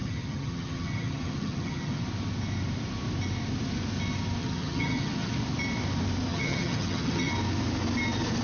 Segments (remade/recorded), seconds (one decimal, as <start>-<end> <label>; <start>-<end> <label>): 0.0-2.0 remade; 2.0-4.4 recorded; 4.4-5.3 remade; 5.3-6.3 recorded; 6.3-7.3 remade; 7.3-8.4 recorded